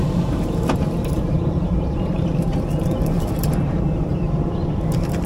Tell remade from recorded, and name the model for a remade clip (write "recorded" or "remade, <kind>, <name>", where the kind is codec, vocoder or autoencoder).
remade, vocoder, BigVGAN v2